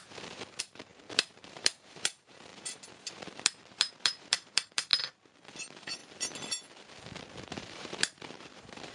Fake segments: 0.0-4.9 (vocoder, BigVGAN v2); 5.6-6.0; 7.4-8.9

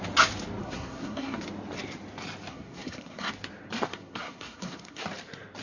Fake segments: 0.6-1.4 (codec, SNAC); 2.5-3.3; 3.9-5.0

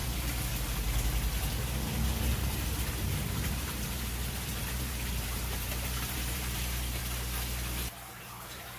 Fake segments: 2.9-7.0 (vocoder, BigVGAN v2); 8.2-8.8

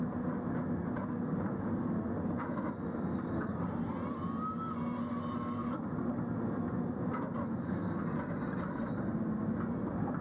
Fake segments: none